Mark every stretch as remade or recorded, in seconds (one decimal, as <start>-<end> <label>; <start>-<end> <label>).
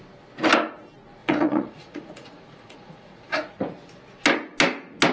0.0-1.2 recorded; 1.2-3.6 remade; 3.6-5.1 recorded